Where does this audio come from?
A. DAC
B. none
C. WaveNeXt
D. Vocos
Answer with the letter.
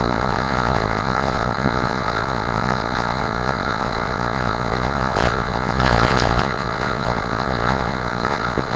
D